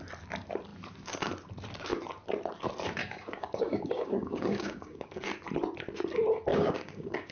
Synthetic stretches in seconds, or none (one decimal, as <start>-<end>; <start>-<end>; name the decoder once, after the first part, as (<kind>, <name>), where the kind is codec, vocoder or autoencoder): 3.0-5.2 (codec, DAC); 6.5-7.3